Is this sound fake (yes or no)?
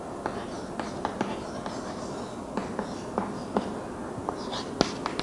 no